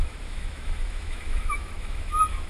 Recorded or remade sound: remade